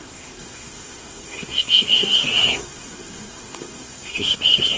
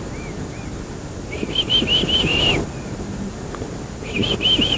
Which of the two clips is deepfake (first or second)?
first